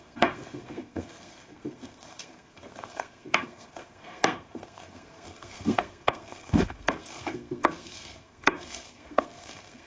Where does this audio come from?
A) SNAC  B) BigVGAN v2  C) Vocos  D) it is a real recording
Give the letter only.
A